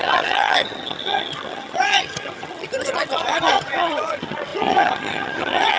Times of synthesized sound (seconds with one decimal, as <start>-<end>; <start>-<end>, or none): 0.0-5.8